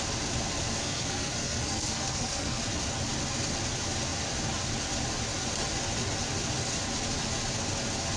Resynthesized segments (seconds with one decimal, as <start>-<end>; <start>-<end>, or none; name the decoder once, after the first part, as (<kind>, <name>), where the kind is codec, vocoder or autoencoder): 0.8-2.6 (codec, SNAC)